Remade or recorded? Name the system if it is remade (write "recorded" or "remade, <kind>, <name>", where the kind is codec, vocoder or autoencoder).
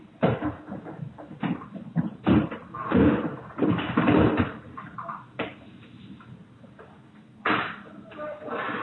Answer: remade, vocoder, BigVGAN v2